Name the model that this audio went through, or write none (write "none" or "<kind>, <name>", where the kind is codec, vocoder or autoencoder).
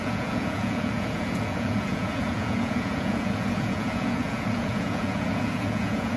vocoder, Vocos